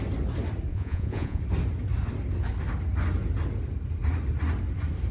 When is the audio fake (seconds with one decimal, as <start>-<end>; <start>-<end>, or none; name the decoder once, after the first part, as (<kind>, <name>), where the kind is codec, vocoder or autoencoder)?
0.7-1.4 (vocoder, Vocos)